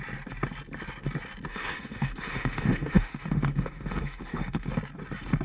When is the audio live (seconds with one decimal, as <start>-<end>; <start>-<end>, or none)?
0.0-1.5; 4.7-5.4